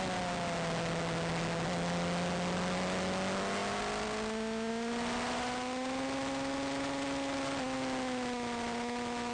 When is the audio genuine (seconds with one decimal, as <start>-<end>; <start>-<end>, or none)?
0.0-9.3